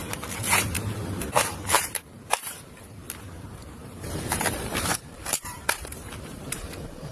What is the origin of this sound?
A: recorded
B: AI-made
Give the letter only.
B